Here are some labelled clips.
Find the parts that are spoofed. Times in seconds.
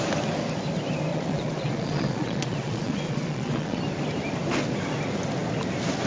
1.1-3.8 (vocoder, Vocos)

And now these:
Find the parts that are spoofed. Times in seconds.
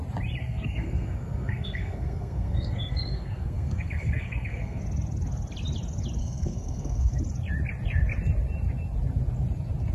0.4-4.8 (codec, SNAC); 6.2-7.1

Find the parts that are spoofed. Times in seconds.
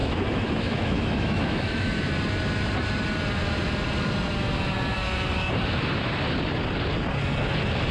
0.0-2.1 (autoencoder, DAC-VAE)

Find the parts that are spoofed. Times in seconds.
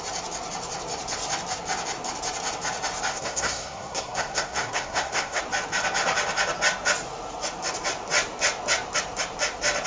3.1-5.4 (codec, SNAC)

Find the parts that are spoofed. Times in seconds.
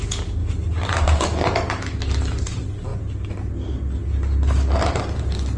none